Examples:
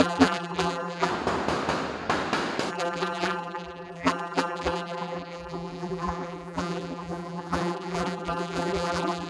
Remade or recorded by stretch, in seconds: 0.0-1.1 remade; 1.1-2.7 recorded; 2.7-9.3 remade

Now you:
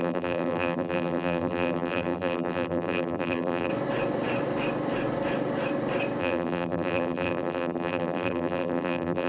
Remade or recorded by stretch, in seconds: 0.0-3.7 remade; 3.7-6.2 recorded; 6.2-9.3 remade

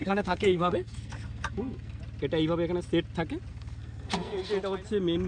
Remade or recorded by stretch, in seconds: 0.0-2.0 remade; 2.0-3.5 recorded; 3.5-4.5 remade; 4.5-5.3 recorded

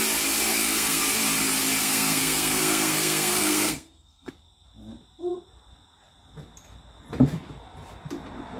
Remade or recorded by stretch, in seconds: 0.0-0.5 recorded; 0.5-1.0 remade; 1.0-1.8 recorded; 1.8-4.3 remade; 4.3-8.6 recorded

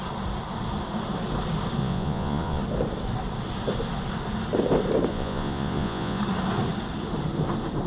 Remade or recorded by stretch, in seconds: 0.0-1.8 recorded; 1.8-2.6 remade; 2.6-5.1 recorded; 5.1-6.2 remade; 6.2-7.9 recorded

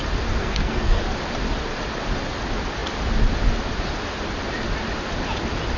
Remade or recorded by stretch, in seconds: 0.0-0.4 recorded; 0.4-1.0 remade; 1.0-5.8 recorded